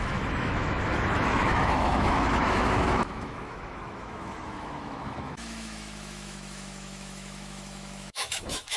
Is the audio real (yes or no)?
no